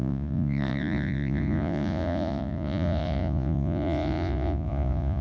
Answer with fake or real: fake